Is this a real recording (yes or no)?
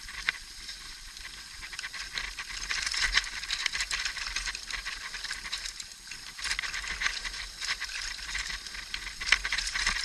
no